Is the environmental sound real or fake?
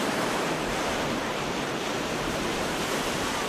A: fake